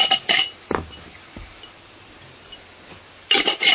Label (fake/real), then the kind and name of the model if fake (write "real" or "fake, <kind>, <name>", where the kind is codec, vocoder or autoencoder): real